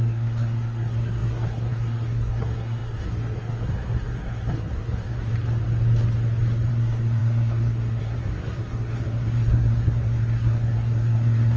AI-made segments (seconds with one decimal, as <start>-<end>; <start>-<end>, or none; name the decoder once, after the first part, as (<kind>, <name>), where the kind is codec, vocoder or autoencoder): 0.0-5.3 (codec, SNAC); 6.7-11.6